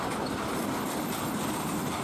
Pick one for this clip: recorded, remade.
recorded